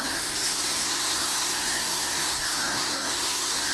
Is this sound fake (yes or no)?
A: yes